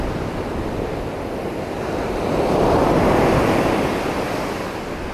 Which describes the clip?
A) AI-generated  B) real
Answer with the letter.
B